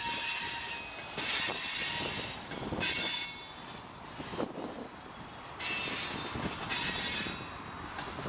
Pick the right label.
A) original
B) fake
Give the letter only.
A